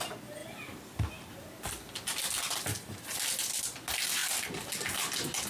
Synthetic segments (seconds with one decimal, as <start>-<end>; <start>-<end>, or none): 0.4-3.6; 4.2-4.7